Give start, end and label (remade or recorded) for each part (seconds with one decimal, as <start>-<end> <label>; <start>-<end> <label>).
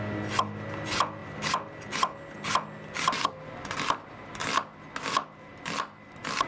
0.0-1.2 recorded; 1.2-1.9 remade; 1.9-5.2 recorded; 5.2-6.1 remade; 6.1-6.5 recorded